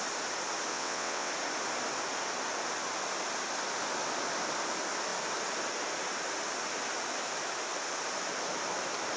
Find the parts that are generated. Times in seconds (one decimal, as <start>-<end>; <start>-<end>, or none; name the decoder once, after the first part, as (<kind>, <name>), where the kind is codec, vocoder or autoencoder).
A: 0.7-1.3 (vocoder, WaveNeXt)